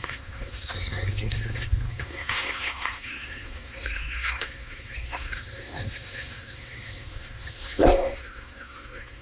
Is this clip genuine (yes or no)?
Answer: no